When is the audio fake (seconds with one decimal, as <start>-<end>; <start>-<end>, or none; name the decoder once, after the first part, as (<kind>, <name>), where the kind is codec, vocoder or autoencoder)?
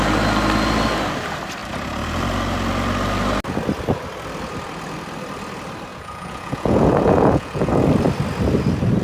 5.9-7.7 (vocoder, Vocos)